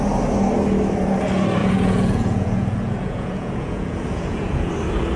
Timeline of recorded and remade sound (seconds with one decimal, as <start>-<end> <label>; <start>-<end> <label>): 0.0-1.6 recorded; 1.6-4.7 remade; 4.7-5.2 recorded